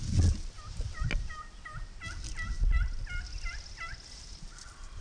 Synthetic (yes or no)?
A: no